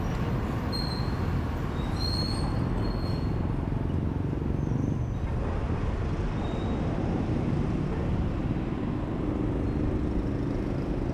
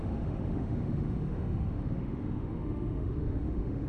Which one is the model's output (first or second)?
second